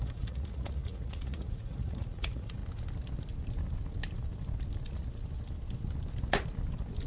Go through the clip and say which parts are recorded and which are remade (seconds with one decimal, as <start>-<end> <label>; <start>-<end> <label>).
0.0-2.6 remade; 2.6-7.1 recorded